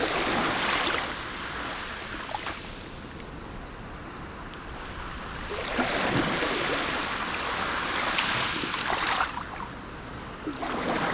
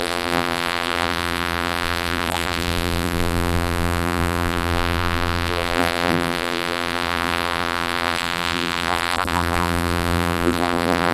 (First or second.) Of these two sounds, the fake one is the second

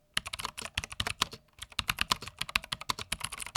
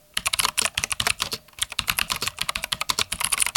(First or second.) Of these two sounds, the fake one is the second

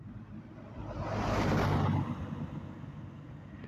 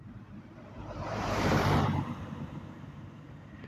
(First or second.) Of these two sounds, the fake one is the second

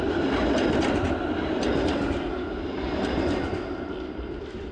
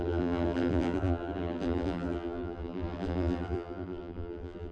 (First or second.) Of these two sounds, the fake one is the second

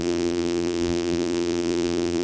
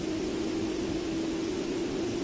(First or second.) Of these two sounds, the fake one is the first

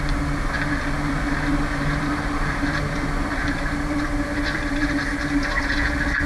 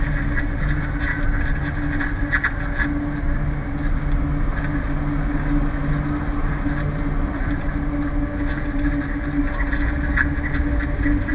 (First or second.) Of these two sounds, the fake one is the first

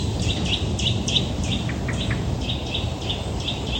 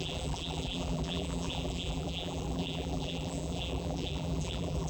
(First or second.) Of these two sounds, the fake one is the second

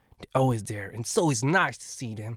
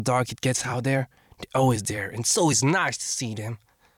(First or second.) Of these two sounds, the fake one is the second